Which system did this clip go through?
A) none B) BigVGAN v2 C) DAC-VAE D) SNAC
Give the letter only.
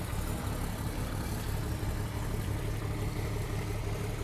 A